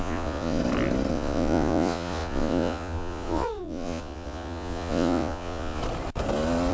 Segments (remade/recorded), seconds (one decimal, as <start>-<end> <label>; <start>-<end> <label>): 0.0-0.6 remade; 0.6-1.1 recorded; 1.1-5.8 remade; 5.8-6.7 recorded